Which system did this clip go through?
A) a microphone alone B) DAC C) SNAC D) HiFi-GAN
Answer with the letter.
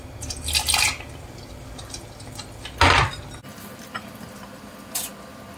A